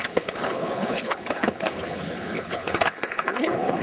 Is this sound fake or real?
fake